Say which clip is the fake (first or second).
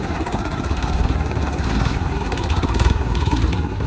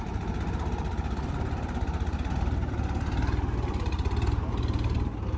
first